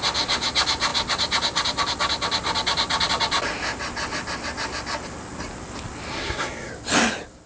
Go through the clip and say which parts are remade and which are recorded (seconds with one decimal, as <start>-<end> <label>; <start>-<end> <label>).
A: 0.0-6.1 recorded; 6.1-6.7 remade; 6.7-7.5 recorded